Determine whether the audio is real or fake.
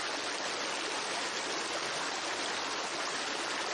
real